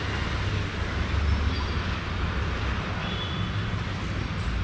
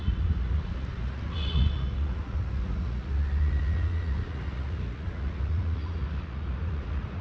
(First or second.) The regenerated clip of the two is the second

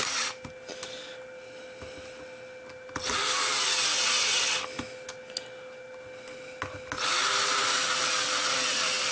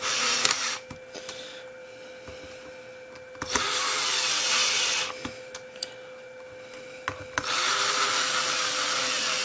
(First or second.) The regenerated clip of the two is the second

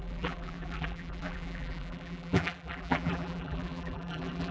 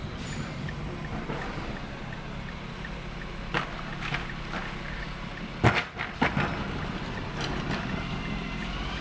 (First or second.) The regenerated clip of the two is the first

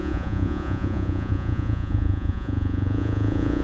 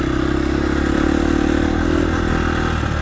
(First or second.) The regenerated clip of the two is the first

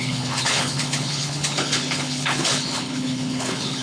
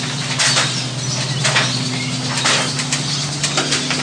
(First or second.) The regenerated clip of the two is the first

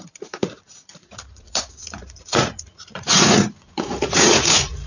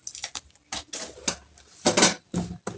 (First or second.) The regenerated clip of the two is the first